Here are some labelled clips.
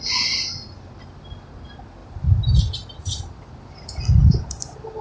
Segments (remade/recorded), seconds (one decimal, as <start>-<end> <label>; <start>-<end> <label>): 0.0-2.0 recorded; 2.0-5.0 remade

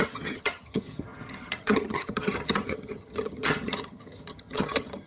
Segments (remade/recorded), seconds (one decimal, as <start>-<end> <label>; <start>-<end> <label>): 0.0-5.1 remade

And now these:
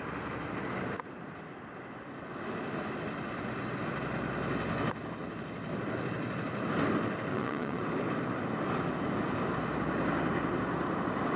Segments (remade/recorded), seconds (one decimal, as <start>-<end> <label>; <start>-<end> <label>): 0.0-7.3 recorded; 7.3-7.8 remade; 7.8-11.4 recorded